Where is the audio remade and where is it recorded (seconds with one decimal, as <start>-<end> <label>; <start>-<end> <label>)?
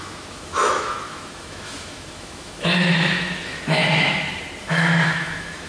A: 0.0-3.8 remade; 3.8-4.6 recorded; 4.6-5.7 remade